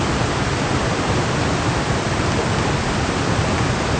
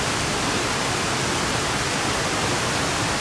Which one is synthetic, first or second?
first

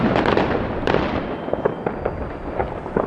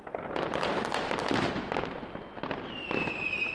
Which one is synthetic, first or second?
first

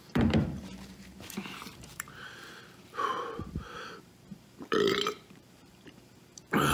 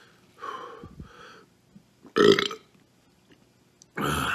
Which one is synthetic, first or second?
first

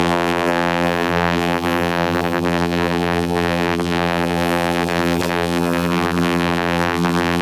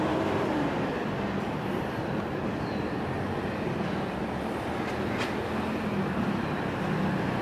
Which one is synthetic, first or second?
first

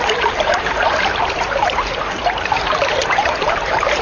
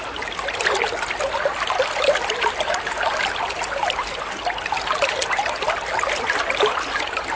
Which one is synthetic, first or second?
first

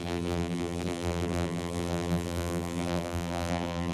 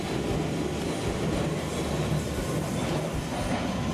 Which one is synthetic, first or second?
first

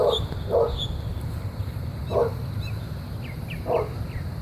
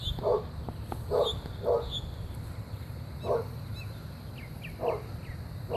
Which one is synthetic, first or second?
first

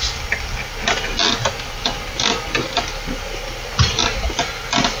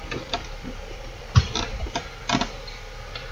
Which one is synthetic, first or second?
second